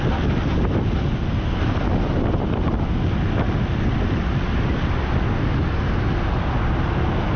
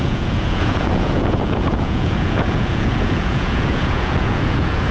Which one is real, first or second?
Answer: first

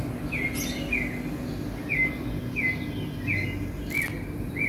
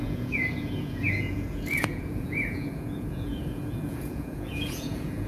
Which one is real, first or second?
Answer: first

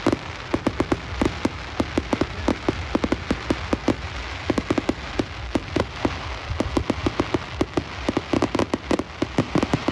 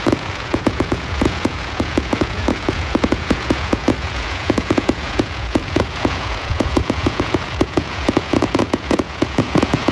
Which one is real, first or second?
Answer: first